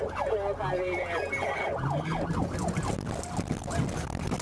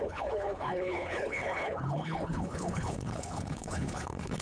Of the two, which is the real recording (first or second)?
first